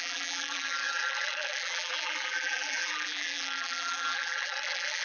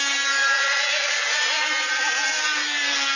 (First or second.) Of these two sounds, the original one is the second